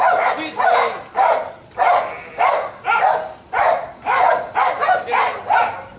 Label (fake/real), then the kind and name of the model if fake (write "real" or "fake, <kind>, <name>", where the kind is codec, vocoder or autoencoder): real